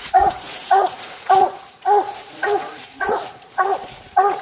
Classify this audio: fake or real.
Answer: fake